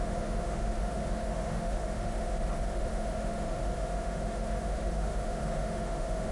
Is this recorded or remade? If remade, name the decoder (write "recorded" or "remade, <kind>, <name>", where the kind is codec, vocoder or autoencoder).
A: remade, autoencoder, DAC-VAE